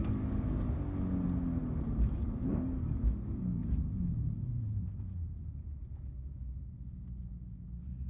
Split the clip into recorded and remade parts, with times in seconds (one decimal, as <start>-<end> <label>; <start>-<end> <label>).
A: 0.0-3.6 recorded; 3.6-6.6 remade; 6.6-8.1 recorded